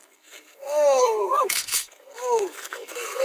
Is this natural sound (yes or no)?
no